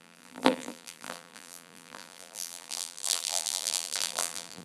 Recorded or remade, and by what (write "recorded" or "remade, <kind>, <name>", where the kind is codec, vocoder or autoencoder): remade, vocoder, BigVGAN v2